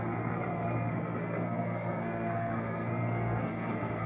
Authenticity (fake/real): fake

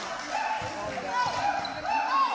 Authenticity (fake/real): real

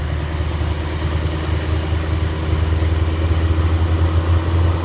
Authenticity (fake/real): real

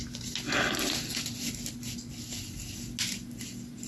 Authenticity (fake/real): real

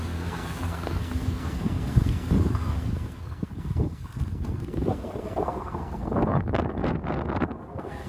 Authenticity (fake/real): fake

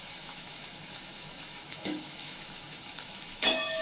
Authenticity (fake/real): fake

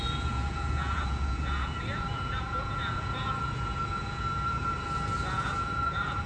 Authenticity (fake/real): fake